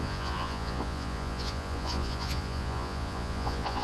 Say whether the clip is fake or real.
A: fake